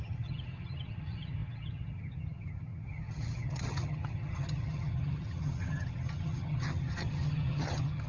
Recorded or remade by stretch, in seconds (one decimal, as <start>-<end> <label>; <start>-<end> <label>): 0.0-8.1 remade